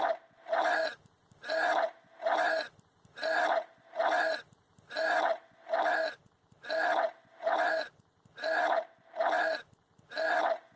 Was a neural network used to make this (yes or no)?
no